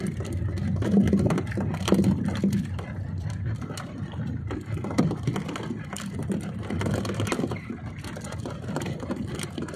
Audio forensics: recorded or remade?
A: recorded